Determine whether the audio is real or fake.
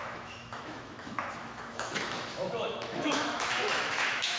fake